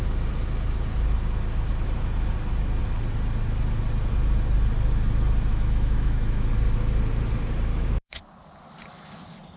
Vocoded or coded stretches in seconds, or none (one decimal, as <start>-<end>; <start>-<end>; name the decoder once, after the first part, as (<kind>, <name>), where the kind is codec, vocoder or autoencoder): 5.5-6.5 (autoencoder, DAC-VAE); 7.7-8.2